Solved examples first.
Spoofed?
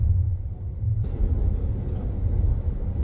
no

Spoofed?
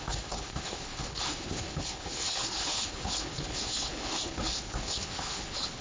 yes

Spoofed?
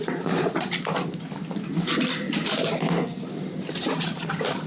no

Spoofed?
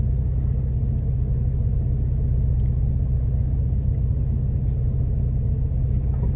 no